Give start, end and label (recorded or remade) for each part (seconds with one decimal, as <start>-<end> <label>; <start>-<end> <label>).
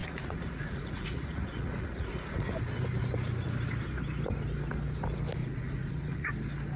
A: 0.0-2.6 remade; 2.6-5.4 recorded; 5.4-6.3 remade; 6.3-6.8 recorded